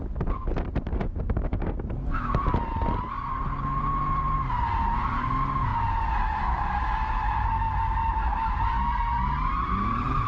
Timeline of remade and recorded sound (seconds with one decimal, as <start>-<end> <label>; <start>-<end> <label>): 0.0-1.0 recorded; 1.0-1.9 remade; 1.9-10.3 recorded